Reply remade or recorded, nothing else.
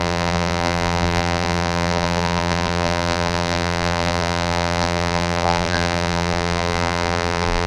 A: remade